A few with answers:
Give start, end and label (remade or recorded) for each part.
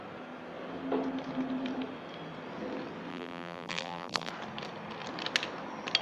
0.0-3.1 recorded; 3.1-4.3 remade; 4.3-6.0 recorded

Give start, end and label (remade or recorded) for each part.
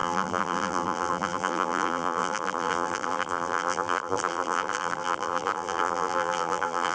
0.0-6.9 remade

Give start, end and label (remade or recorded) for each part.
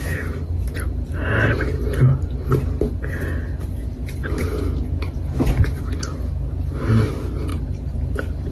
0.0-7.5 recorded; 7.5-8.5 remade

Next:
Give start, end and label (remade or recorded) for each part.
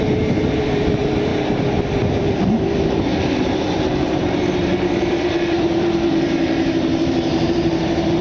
0.0-1.3 remade; 1.3-2.0 recorded; 2.0-8.2 remade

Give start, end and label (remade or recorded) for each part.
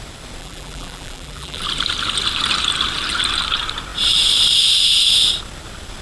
0.0-0.4 recorded; 0.4-1.6 remade; 1.6-6.0 recorded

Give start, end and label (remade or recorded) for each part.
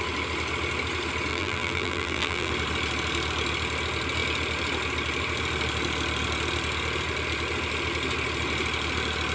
0.0-1.3 recorded; 1.3-2.5 remade; 2.5-9.3 recorded